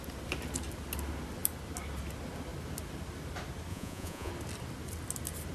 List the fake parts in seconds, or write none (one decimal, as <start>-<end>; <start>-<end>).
3.7-4.3